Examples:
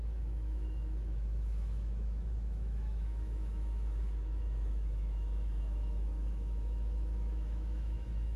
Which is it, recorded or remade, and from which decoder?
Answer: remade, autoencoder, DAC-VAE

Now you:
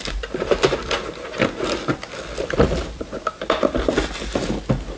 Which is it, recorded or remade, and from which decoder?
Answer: recorded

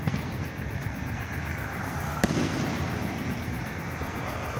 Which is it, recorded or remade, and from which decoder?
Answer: remade, codec, SNAC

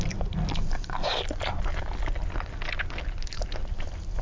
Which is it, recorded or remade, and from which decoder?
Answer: recorded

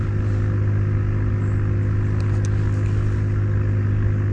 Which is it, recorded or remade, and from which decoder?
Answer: recorded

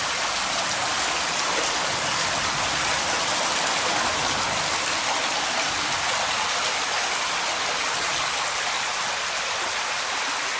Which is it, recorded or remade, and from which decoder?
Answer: recorded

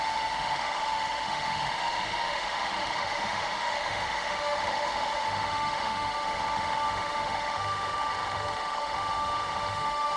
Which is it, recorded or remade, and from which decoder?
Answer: remade, autoencoder, DAC-VAE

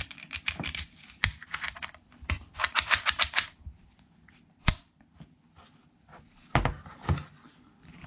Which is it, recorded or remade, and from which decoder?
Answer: remade, vocoder, BigVGAN v2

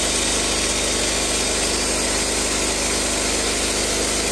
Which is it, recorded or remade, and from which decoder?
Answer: recorded